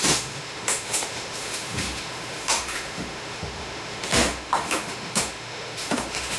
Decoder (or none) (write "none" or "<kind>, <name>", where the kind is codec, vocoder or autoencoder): autoencoder, DAC-VAE